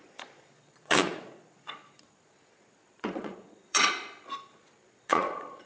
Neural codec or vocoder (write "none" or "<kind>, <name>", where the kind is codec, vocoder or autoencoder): vocoder, Vocos